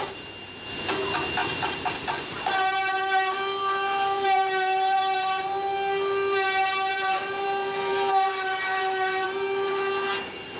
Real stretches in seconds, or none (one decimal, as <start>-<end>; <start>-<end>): 0.0-1.4; 5.4-6.9; 9.7-10.6